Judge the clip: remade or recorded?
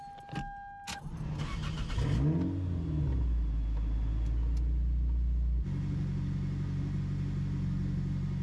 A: recorded